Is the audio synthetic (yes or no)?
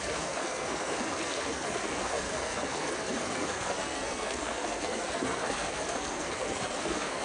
yes